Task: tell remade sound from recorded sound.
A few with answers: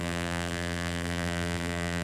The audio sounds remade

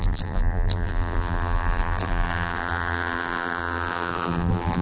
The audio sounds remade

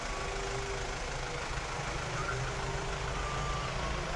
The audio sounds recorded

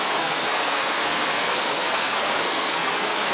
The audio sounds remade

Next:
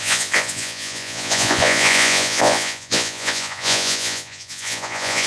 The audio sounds remade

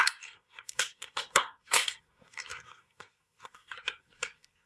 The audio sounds remade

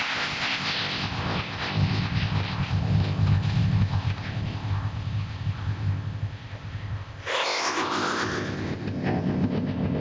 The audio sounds remade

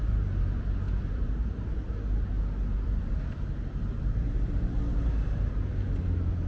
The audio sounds recorded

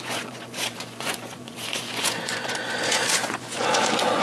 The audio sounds remade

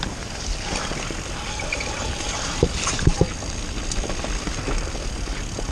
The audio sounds recorded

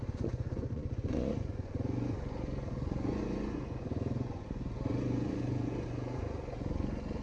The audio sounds remade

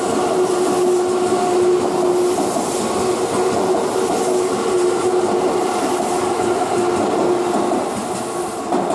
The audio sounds recorded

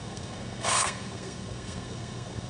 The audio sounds remade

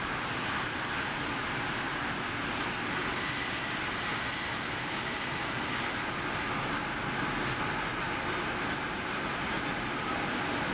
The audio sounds recorded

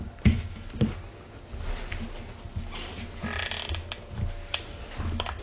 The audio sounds recorded